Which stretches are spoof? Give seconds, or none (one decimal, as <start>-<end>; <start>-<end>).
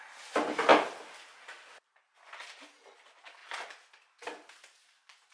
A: none